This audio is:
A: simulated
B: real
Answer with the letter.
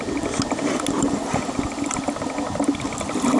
B